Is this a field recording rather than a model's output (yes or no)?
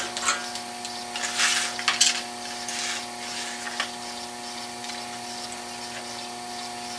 yes